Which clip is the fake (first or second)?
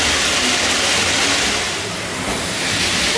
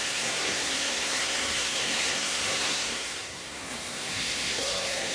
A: second